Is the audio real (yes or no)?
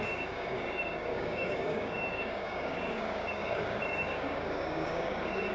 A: no